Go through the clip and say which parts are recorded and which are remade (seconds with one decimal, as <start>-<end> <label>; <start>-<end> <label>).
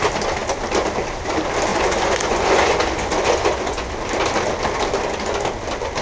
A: 0.0-1.7 recorded; 1.7-3.9 remade; 3.9-6.0 recorded